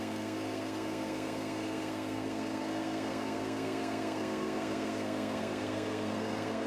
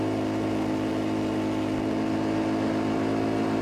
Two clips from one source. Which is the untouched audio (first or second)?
second